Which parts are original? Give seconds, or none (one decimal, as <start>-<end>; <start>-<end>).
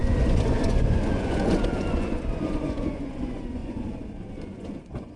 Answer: none